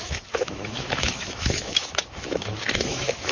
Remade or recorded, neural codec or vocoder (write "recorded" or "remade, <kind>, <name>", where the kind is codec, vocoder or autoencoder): remade, autoencoder, DAC-VAE